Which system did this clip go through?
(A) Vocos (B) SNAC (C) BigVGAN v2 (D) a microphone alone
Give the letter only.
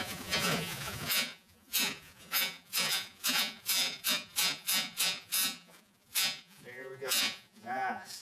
A